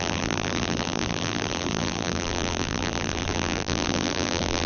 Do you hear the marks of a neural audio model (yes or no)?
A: yes